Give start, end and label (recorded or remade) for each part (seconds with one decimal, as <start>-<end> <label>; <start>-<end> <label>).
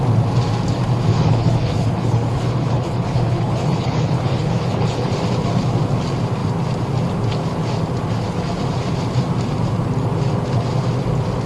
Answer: 0.0-1.1 recorded; 1.1-5.1 remade; 5.1-11.5 recorded